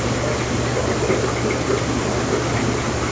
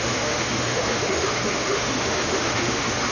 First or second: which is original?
first